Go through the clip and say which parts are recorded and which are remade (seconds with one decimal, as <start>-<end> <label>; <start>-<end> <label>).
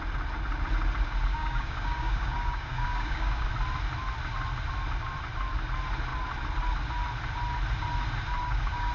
0.0-1.3 recorded; 1.3-3.5 remade; 3.5-8.4 recorded; 8.4-8.9 remade